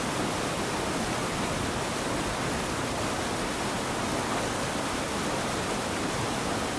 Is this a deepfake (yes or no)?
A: no